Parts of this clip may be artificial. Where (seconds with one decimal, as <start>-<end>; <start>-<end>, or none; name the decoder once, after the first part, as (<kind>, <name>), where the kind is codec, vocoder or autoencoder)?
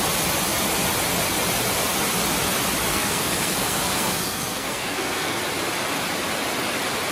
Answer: 2.9-5.4 (codec, SNAC)